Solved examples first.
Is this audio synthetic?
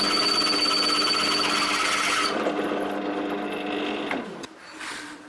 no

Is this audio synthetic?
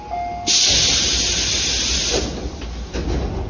no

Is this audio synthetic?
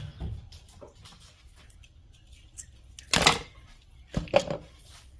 no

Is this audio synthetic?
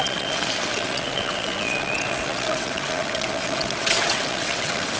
yes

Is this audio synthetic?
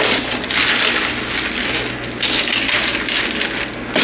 no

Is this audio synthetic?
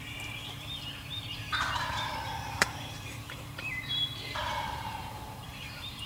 yes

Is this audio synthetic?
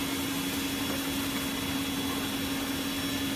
no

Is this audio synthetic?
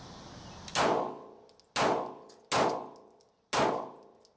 no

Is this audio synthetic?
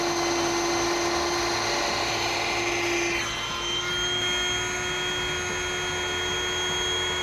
no